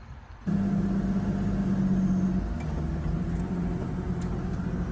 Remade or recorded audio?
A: recorded